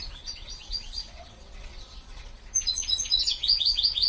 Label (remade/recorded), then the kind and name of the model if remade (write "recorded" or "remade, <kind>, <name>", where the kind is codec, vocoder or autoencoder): remade, vocoder, Vocos